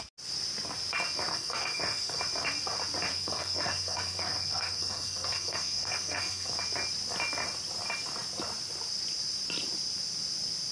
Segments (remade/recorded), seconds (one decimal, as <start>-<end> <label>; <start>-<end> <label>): 0.0-1.3 recorded; 1.3-2.2 remade; 2.2-3.1 recorded; 3.1-6.5 remade; 6.5-10.7 recorded